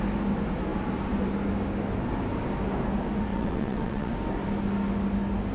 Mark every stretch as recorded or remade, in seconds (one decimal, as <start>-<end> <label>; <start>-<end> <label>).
0.0-3.3 recorded; 3.3-4.1 remade; 4.1-5.5 recorded